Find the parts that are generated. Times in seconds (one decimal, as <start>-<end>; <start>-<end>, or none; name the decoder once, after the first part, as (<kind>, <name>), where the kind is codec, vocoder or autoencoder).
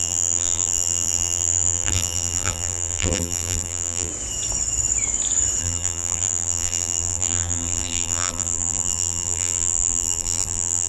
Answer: 0.0-4.1 (vocoder, BigVGAN v2); 5.6-10.9